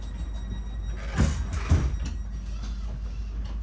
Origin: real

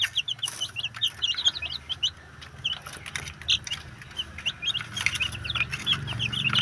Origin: real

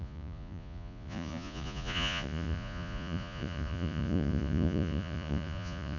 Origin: fake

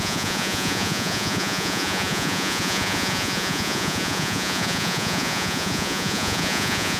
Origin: fake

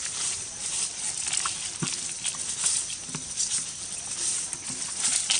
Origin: real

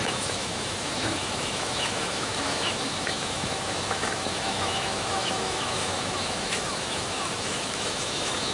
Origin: fake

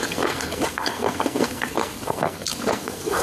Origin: fake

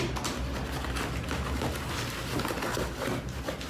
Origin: real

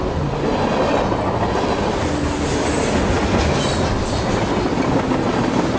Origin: real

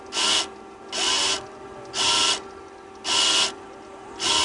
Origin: real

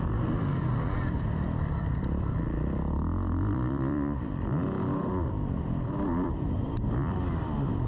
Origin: fake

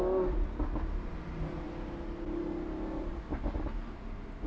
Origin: real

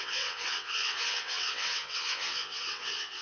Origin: fake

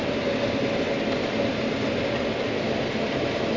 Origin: real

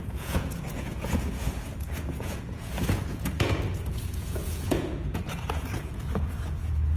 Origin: fake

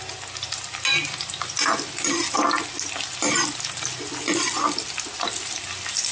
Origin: real